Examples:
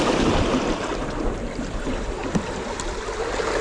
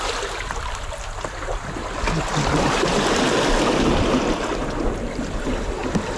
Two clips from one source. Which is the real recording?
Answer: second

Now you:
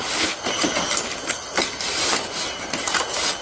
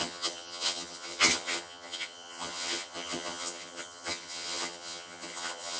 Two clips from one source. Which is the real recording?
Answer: first